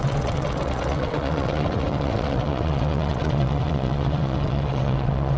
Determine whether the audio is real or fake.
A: fake